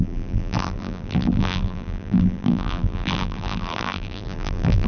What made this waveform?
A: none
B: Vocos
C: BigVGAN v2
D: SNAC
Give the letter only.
C